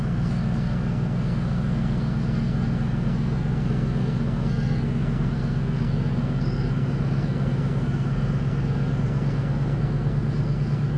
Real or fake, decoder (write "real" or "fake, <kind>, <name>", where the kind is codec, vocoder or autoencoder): fake, codec, SNAC